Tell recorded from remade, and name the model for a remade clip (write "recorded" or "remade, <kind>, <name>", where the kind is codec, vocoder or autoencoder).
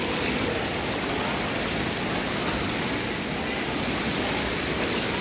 recorded